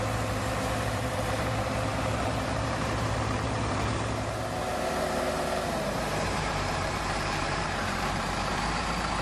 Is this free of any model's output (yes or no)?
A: no